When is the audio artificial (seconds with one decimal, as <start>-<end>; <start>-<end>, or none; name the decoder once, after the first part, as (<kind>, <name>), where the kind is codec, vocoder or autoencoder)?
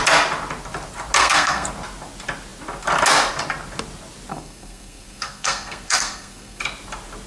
1.2-1.7 (codec, SNAC); 4.3-6.6